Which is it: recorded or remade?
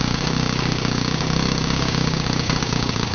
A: remade